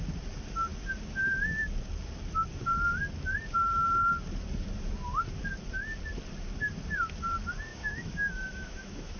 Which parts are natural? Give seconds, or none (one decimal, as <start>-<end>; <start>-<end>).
0.0-7.7